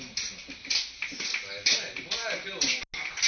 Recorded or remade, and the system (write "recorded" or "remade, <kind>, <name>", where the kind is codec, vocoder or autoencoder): recorded